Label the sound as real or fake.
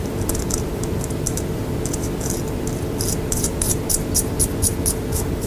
real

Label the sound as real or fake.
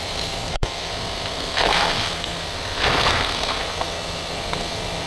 fake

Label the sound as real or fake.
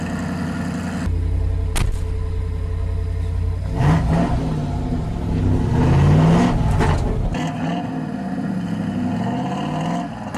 real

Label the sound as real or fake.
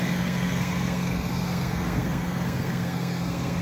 fake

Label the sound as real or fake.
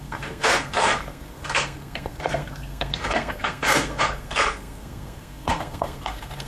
fake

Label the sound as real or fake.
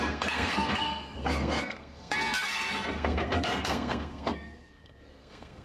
fake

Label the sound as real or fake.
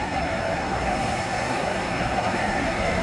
fake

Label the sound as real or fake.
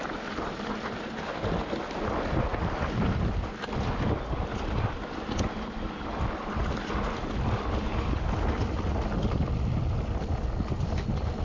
real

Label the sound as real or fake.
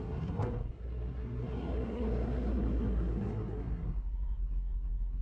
fake